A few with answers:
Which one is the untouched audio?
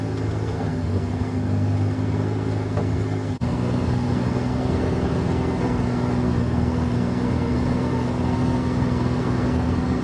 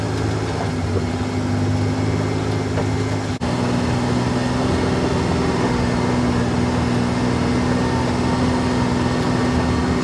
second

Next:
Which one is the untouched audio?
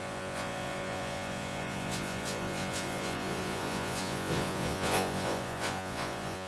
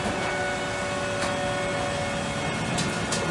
second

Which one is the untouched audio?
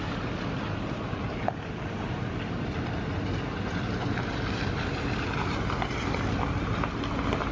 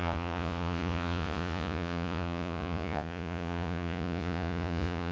first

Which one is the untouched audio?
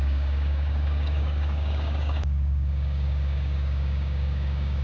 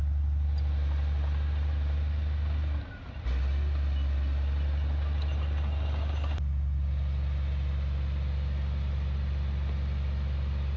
second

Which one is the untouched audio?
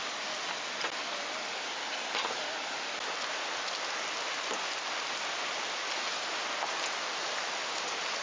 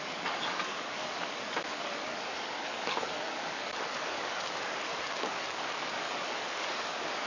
first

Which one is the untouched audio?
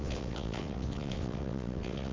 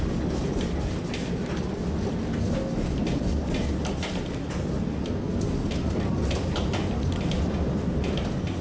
second